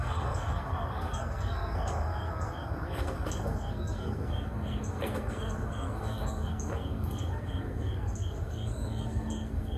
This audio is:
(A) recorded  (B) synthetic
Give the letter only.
B